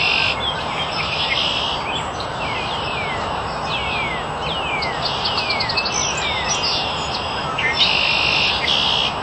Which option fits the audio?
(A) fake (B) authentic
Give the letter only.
B